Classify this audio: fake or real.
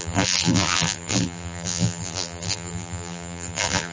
fake